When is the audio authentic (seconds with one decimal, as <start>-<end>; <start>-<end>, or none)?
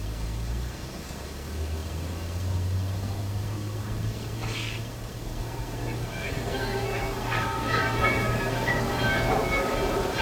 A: 8.9-10.2